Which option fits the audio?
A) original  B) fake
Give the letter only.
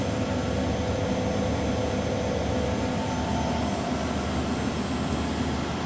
A